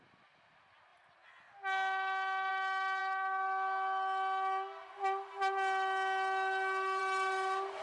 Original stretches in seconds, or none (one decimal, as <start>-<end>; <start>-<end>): 0.0-7.8